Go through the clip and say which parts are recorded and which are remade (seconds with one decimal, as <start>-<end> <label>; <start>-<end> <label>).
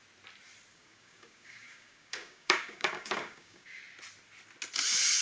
0.0-0.7 recorded; 0.7-3.8 remade; 3.8-5.2 recorded